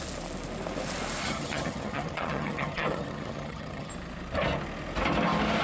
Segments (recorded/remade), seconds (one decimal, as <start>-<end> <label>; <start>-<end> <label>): 0.0-1.2 recorded; 1.2-3.9 remade; 3.9-5.6 recorded